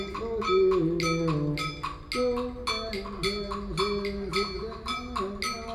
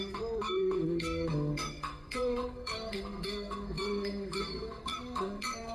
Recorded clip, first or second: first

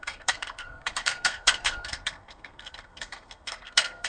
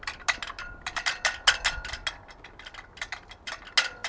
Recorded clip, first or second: second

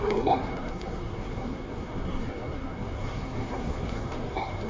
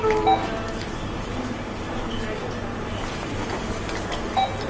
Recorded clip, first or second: second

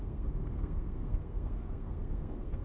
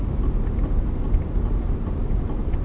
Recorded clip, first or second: second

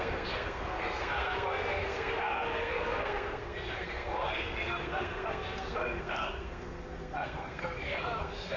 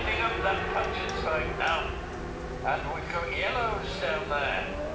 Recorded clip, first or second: second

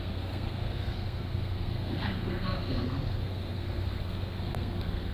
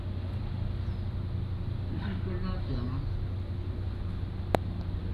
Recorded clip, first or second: second